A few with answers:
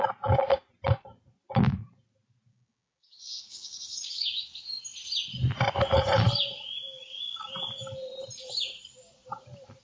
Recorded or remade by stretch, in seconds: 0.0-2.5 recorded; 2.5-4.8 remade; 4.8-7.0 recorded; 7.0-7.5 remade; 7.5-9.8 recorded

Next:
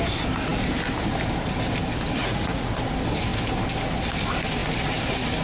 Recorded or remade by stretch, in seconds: 0.0-2.2 recorded; 2.2-2.7 remade; 2.7-5.4 recorded

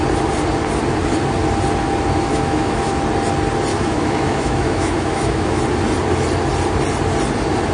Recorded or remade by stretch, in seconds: 0.0-2.3 recorded; 2.3-3.0 remade; 3.0-3.7 recorded; 3.7-5.6 remade; 5.6-7.7 recorded